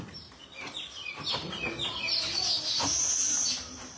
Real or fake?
real